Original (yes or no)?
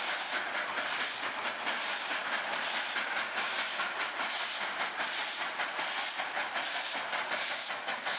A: yes